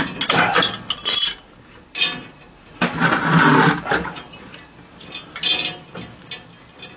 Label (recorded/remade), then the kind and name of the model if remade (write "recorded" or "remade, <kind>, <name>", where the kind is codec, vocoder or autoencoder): recorded